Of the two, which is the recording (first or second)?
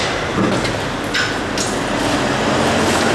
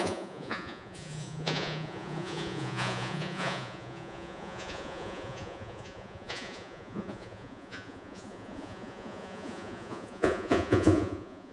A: first